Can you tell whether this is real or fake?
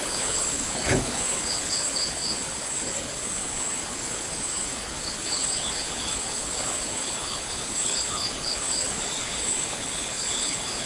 fake